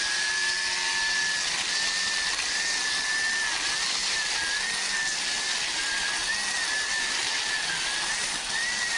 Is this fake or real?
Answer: fake